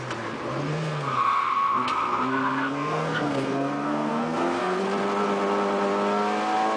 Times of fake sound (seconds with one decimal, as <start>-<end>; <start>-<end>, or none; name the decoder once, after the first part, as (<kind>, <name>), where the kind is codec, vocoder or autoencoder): 0.7-4.8 (codec, SNAC)